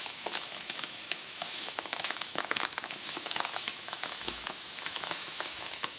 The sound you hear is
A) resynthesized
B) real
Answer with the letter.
A